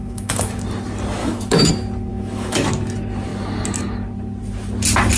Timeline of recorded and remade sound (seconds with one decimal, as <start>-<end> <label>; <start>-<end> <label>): 0.0-0.6 remade; 0.6-1.2 recorded; 1.2-1.7 remade; 1.7-2.1 recorded; 2.1-2.7 remade; 2.7-5.2 recorded